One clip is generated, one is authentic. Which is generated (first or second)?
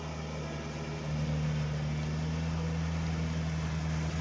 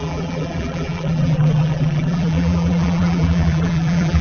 second